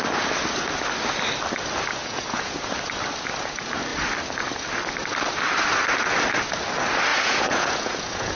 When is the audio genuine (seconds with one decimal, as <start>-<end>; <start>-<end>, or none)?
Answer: 0.0-2.0; 2.7-7.1